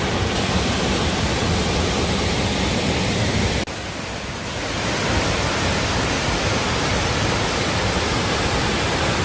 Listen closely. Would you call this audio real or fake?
real